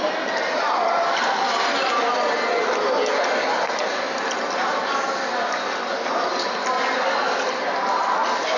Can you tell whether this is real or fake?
real